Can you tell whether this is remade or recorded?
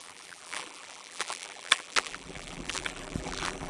remade